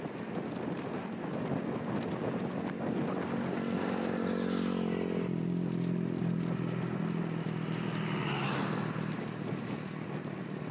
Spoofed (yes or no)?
no